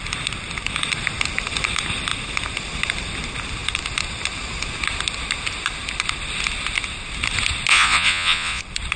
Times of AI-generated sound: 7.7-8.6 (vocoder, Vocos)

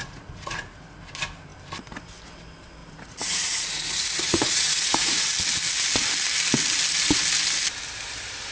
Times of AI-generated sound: 0.0-1.0 (vocoder, Vocos); 2.8-5.3

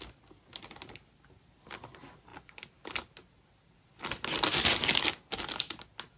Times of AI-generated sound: none

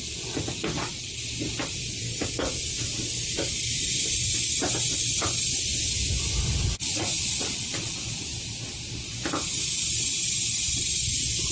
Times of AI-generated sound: 6.8-7.9 (vocoder, Vocos)